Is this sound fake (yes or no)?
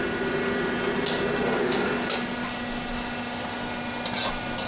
no